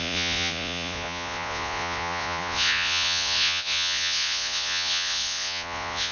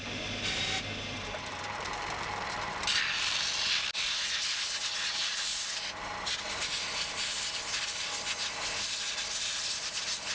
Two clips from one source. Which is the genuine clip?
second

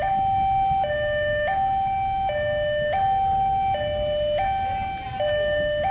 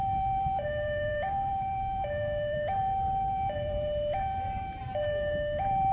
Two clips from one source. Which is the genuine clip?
first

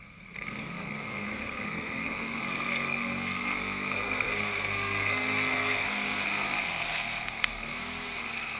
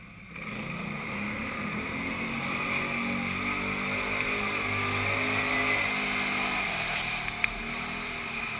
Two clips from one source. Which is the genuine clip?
second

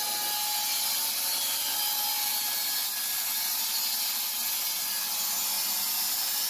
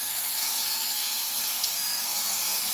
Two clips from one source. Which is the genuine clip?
first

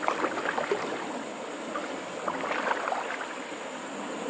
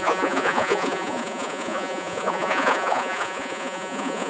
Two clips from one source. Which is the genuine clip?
first